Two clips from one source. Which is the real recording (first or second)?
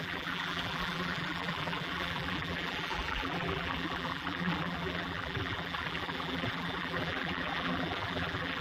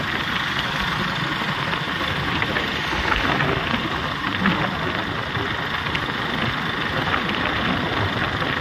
second